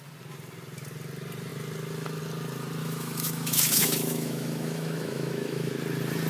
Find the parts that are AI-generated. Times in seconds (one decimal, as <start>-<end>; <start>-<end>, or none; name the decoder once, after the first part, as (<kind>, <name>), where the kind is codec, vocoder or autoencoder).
2.8-5.7 (autoencoder, DAC-VAE)